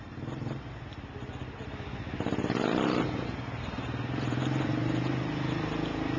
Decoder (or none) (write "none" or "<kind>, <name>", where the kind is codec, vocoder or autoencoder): none